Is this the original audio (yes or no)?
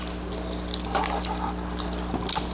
yes